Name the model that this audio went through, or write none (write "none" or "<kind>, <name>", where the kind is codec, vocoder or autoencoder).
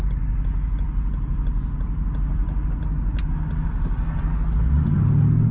none